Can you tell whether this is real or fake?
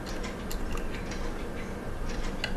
real